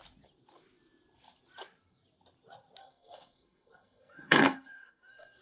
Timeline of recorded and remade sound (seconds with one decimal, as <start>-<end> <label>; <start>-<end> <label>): 0.0-2.8 recorded; 2.8-5.4 remade